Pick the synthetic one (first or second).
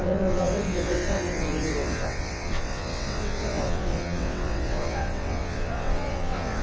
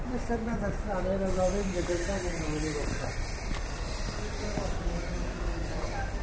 first